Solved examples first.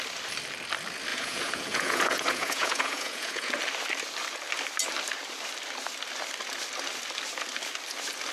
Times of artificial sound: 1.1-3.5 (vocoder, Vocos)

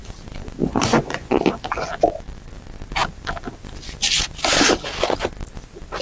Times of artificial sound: 0.6-1.8 (vocoder, Vocos)

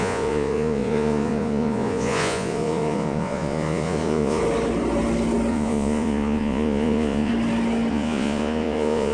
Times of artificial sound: 0.0-4.4 (vocoder, Vocos); 5.5-7.3; 7.9-9.1

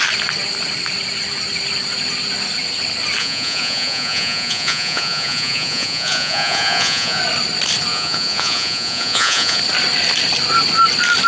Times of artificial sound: 3.2-7.2 (vocoder, Vocos); 7.9-9.6

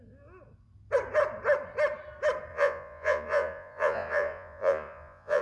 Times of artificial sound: 2.5-5.4 (vocoder, Vocos)

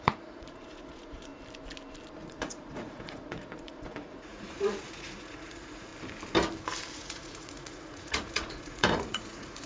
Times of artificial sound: 0.0-1.3 (vocoder, Vocos); 2.2-5.9; 6.9-9.7